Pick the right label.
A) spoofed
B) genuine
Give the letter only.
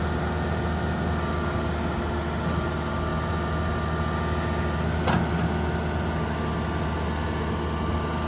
B